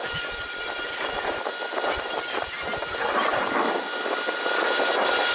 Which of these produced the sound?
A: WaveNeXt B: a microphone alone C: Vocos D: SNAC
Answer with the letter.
B